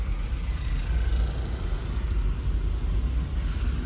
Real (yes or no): yes